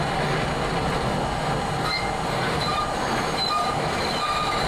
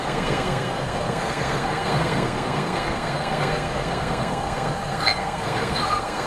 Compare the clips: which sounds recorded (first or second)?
first